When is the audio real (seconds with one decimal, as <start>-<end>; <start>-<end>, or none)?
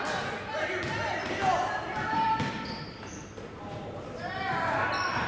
0.0-1.2; 4.4-5.3